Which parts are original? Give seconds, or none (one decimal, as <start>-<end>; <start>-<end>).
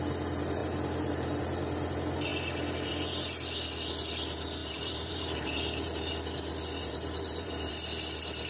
0.0-0.6; 1.4-4.6; 6.1-6.8; 7.7-8.5